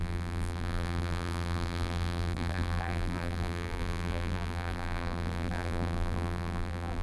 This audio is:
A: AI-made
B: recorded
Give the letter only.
A